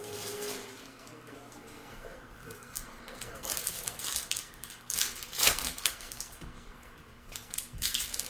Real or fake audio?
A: fake